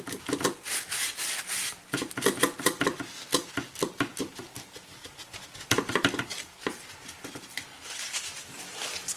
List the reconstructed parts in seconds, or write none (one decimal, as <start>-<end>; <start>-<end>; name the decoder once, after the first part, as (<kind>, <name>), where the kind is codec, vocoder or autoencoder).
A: none